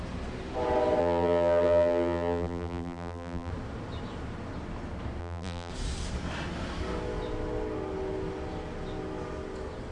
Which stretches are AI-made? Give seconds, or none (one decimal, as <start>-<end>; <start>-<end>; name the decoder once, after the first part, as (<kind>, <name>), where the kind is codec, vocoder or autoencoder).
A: 1.0-3.5 (vocoder, BigVGAN v2); 5.2-5.7